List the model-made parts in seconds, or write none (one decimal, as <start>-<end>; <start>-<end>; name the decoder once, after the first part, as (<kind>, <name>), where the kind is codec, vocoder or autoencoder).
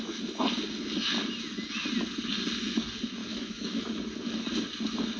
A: 3.2-3.9 (autoencoder, DAC-VAE)